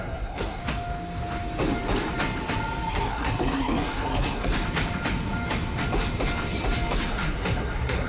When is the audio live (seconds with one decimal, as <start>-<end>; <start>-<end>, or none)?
0.6-2.9; 4.5-7.1